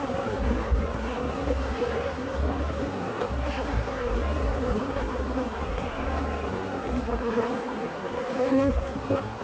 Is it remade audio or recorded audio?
remade